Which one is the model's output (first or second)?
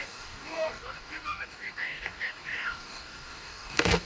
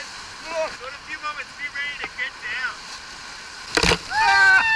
first